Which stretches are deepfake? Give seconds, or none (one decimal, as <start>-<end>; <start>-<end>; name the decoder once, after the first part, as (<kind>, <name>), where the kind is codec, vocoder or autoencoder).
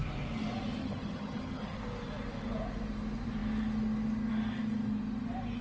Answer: 0.8-1.8 (vocoder, HiFi-GAN)